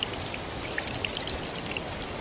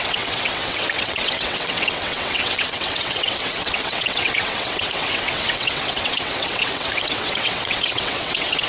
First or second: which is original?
first